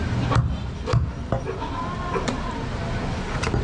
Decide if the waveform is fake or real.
real